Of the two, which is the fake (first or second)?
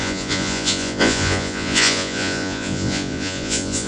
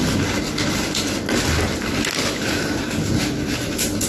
first